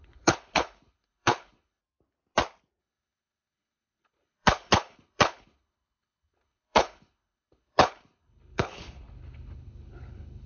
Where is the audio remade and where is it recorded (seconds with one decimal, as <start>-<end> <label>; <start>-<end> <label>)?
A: 0.0-1.8 remade; 1.8-2.8 recorded; 2.8-10.5 remade